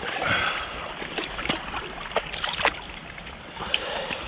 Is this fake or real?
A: real